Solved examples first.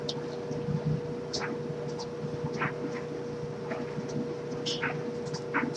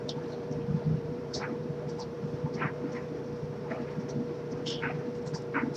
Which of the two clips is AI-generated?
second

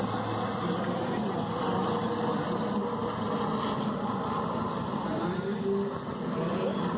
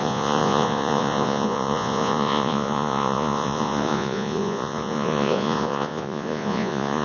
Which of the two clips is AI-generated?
second